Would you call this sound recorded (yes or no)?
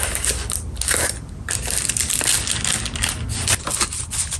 yes